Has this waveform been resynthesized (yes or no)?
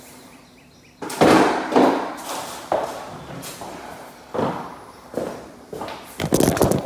no